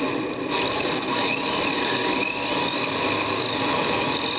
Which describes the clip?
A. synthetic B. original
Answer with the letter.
B